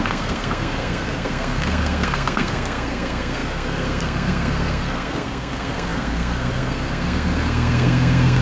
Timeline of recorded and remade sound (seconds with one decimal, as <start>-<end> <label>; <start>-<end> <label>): 0.0-8.4 remade